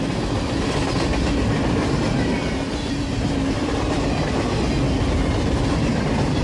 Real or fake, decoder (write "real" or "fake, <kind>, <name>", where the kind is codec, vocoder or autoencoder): real